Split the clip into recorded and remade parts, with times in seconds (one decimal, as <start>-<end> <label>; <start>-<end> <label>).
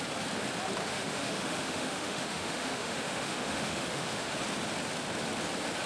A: 0.0-0.8 recorded; 0.8-4.3 remade; 4.3-5.9 recorded